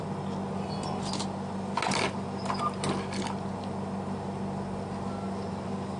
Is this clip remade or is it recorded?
recorded